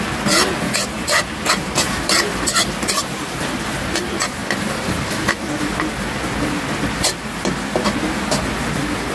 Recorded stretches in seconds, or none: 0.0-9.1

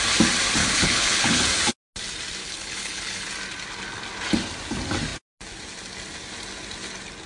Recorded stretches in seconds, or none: 0.0-0.6; 1.4-2.4; 3.3-7.3

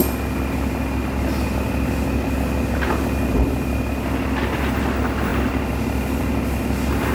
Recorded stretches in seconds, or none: 0.0-7.1

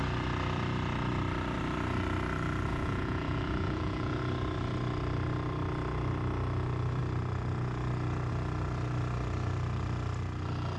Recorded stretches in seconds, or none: 0.0-2.7; 4.2-10.8

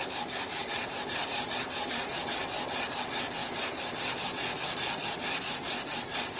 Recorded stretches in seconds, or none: 0.0-0.6; 2.1-3.4; 4.2-6.4

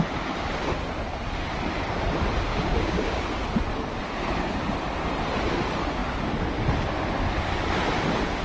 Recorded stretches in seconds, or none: 0.0-2.5; 3.2-8.4

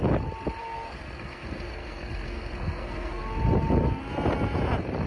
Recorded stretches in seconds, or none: 0.0-0.6; 3.2-5.1

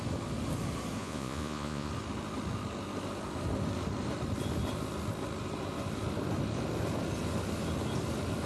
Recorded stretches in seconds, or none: 0.0-1.0; 1.9-8.5